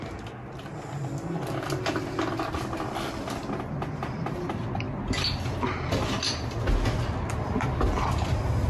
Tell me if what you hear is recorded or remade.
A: recorded